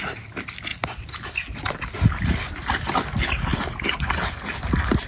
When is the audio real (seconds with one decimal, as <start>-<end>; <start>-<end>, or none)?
0.0-5.1